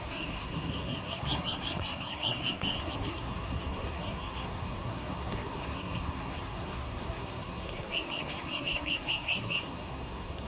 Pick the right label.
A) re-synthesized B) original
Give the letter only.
A